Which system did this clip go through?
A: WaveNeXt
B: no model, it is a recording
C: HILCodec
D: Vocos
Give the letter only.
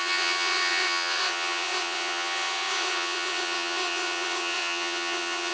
A